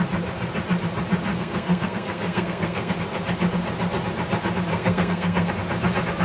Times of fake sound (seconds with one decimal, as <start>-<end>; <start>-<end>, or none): 1.3-2.9; 4.7-5.5